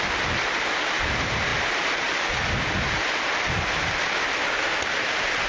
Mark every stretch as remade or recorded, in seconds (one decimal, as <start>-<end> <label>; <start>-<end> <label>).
0.0-5.5 recorded